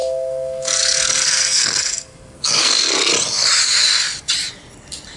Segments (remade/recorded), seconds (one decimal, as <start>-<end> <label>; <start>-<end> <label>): 0.0-3.1 remade; 3.1-5.2 recorded